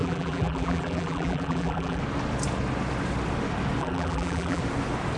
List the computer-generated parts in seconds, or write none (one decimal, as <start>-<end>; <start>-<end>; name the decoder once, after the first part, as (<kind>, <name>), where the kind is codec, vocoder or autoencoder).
0.0-2.0 (vocoder, BigVGAN v2); 3.8-4.6